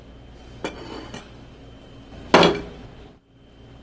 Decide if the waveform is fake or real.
real